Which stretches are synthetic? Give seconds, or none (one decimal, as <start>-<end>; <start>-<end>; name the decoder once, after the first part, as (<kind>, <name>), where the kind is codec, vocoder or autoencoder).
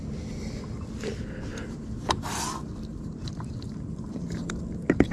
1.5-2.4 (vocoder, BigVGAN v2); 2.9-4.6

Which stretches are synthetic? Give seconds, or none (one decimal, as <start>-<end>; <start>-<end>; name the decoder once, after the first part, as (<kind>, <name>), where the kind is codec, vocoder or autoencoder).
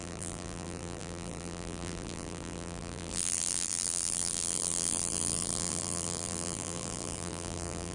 0.0-7.9 (vocoder, BigVGAN v2)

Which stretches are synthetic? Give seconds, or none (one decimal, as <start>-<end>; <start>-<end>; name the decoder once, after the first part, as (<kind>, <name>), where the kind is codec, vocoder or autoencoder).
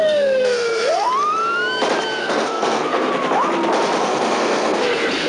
0.0-1.1 (codec, SNAC); 2.2-3.1; 4.0-5.3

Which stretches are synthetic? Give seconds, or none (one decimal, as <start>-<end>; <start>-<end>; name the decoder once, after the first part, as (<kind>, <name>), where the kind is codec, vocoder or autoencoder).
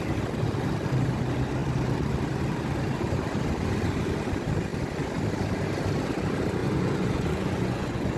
6.6-8.2 (vocoder, Vocos)